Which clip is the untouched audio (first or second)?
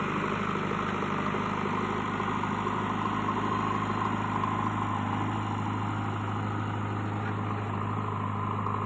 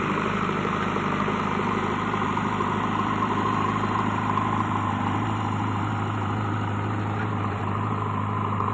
first